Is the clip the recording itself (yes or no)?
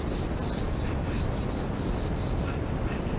yes